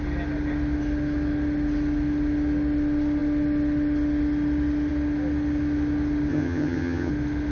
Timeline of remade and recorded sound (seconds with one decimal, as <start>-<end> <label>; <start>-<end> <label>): 0.0-6.3 recorded; 6.3-7.1 remade; 7.1-7.5 recorded